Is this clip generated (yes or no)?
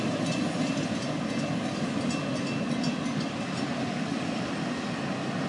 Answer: no